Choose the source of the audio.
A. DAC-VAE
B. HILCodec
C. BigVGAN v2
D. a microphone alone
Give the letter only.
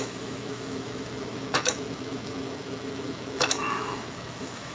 A